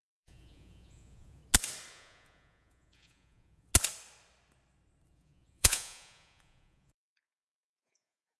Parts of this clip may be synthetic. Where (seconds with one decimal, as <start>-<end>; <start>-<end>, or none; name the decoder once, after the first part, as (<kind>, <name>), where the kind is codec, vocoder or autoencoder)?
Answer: 0.0-1.4 (vocoder, Vocos); 1.9-3.7; 5.1-8.4